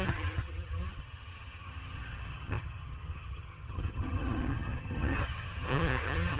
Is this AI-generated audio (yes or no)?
yes